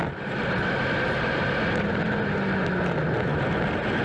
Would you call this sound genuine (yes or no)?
yes